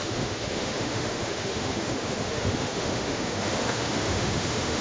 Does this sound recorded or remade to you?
remade